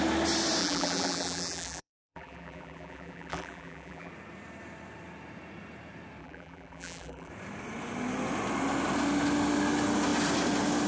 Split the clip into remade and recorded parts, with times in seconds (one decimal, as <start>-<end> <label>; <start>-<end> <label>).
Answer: 0.0-0.6 recorded; 0.6-4.1 remade; 4.1-6.2 recorded; 6.2-7.3 remade; 7.3-10.9 recorded